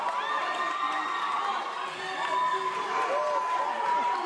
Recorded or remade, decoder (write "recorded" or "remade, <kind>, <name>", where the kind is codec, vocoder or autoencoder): recorded